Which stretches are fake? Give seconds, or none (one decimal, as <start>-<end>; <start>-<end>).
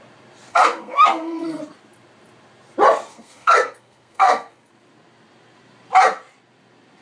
0.5-1.6; 3.1-4.7